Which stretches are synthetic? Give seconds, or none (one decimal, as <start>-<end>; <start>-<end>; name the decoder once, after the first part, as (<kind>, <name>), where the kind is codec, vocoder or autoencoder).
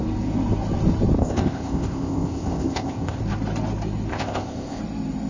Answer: 1.2-3.2 (codec, ZipCodec); 4.1-4.8